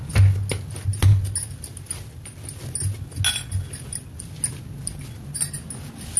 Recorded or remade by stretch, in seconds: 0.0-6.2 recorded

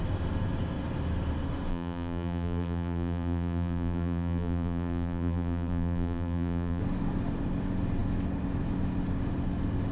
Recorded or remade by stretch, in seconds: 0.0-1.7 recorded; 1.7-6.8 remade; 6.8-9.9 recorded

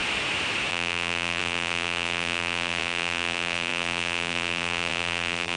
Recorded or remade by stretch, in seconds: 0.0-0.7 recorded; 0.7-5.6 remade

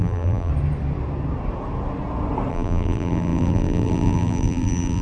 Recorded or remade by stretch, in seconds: 0.0-0.5 remade; 0.5-2.5 recorded; 2.5-5.0 remade

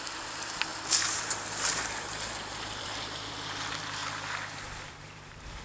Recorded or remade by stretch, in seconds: 0.0-0.7 remade; 0.7-1.6 recorded; 1.6-4.0 remade; 4.0-4.5 recorded; 4.5-5.6 remade

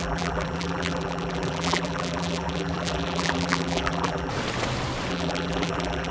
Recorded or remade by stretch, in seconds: 0.0-4.3 remade; 4.3-5.1 recorded; 5.1-6.1 remade

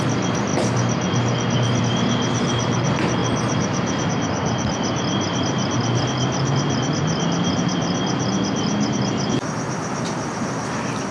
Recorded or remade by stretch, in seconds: 0.0-11.1 recorded